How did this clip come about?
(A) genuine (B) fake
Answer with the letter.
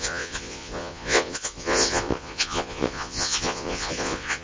B